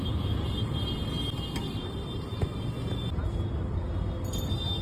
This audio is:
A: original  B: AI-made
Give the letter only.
A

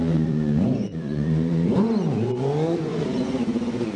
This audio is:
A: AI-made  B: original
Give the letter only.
A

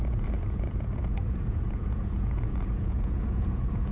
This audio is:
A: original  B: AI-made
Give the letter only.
B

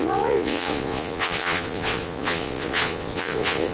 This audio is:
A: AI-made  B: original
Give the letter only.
A